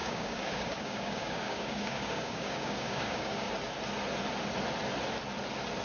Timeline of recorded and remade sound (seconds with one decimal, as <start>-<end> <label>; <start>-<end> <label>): 0.0-3.5 remade; 3.5-5.8 recorded